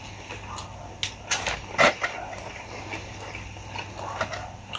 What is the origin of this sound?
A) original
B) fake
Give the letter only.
A